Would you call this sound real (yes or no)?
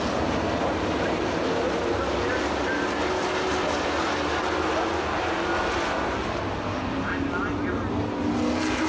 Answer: yes